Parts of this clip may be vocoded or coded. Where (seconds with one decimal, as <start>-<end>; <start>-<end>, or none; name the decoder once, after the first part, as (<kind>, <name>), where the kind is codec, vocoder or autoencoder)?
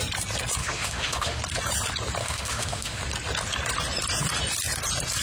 0.6-1.4 (autoencoder, DAC-VAE); 2.2-3.0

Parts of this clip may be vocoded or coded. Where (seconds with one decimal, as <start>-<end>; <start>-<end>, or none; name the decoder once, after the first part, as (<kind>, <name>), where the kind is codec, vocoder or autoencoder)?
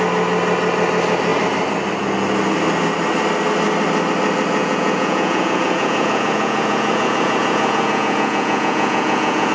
4.6-9.5 (vocoder, Vocos)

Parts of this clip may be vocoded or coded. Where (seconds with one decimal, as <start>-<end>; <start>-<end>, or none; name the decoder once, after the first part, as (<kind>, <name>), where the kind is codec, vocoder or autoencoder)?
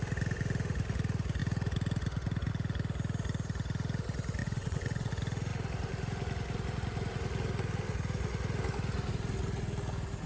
4.4-5.1 (vocoder, WaveNeXt)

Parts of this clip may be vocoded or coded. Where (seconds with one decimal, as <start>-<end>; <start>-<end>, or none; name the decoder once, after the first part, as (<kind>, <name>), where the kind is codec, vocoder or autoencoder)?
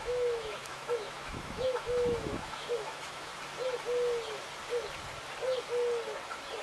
0.0-3.3 (autoencoder, DAC-VAE)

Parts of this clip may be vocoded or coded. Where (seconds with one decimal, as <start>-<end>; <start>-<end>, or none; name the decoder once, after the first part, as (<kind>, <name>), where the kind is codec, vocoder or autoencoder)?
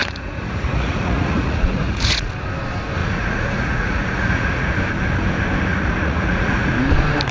0.0-2.3 (vocoder, Vocos); 3.0-4.7; 5.7-6.7